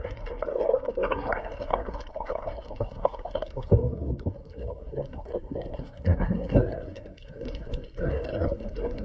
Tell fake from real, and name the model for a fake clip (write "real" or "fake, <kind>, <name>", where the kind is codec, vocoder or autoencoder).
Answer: fake, codec, SNAC